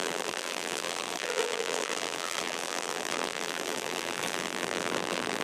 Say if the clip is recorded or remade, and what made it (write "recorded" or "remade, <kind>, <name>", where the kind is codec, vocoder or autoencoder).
remade, vocoder, BigVGAN v2